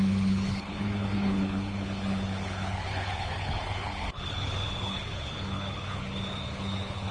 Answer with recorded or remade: remade